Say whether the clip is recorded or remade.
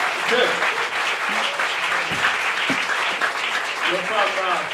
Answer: recorded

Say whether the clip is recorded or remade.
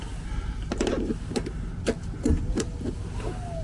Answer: recorded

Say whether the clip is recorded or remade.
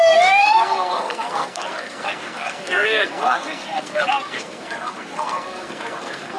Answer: remade